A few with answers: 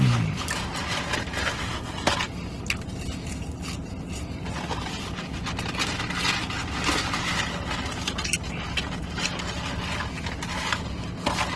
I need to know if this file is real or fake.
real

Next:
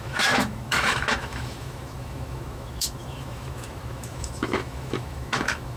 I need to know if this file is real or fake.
fake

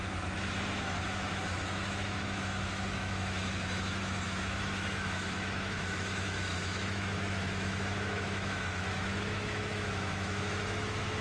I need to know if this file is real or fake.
fake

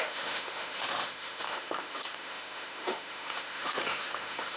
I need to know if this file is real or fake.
fake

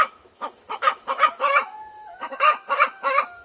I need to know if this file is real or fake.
fake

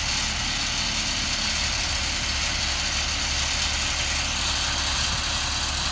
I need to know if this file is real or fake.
real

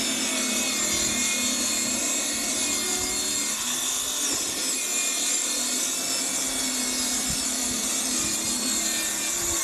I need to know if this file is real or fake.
real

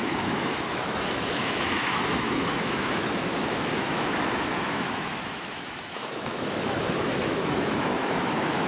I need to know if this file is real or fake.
fake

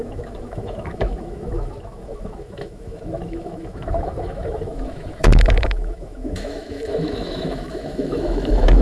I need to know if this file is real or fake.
fake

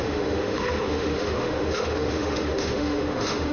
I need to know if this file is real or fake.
fake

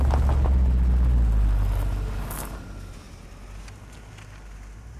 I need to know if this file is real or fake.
real